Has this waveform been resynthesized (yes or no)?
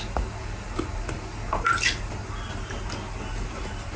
no